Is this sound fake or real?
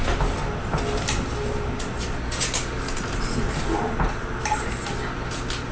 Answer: real